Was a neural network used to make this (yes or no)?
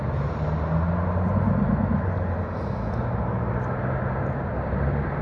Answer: no